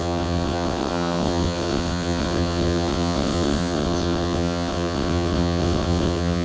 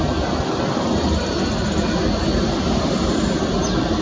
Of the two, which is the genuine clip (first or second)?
second